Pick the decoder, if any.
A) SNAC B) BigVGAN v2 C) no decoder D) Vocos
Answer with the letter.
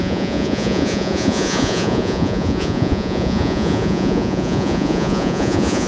D